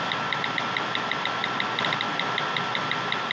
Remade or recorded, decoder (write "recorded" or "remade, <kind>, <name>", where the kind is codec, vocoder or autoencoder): recorded